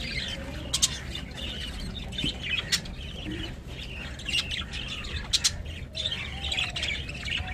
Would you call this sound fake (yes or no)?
no